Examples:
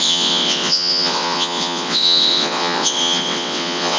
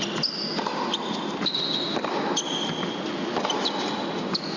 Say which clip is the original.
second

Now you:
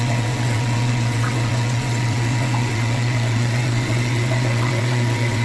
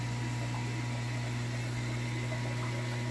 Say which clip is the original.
second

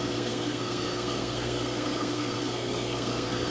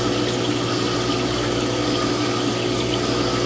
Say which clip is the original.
second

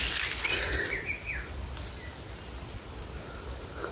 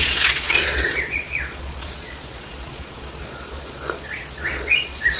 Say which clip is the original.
first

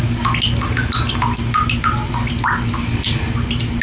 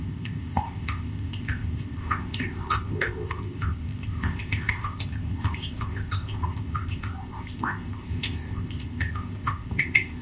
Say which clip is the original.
first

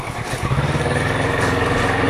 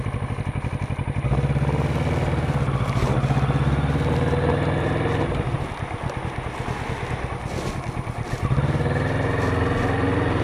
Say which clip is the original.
second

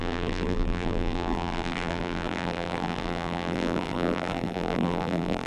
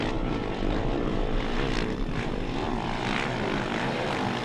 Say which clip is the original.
second